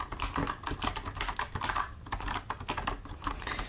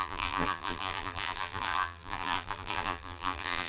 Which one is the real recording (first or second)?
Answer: first